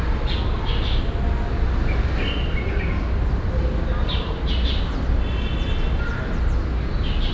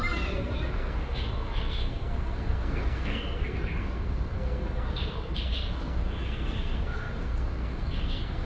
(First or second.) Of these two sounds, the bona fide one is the first